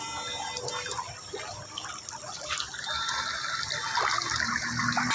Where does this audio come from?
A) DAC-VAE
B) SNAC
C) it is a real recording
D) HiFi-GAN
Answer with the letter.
C